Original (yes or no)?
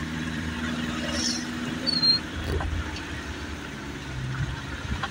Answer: no